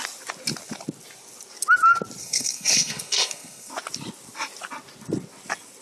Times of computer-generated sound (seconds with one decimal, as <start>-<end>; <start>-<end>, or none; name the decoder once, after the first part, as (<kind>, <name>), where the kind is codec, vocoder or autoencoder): 2.2-3.7 (codec, SNAC)